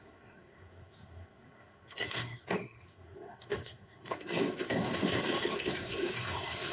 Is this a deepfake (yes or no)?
yes